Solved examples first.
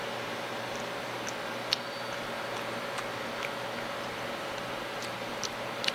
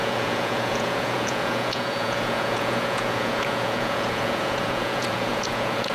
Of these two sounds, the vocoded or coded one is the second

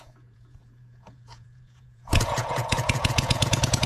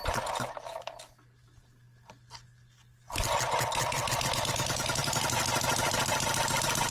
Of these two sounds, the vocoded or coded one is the first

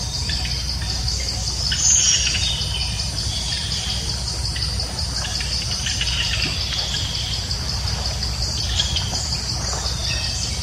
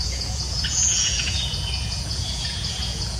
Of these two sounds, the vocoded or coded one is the second